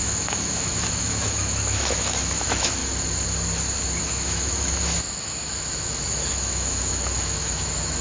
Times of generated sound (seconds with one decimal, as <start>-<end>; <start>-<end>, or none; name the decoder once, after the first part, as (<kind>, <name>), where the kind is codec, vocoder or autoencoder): 0.0-2.8 (autoencoder, DAC-VAE); 4.0-8.0